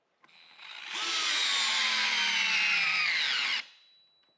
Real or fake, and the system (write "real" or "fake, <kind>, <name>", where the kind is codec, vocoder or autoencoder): real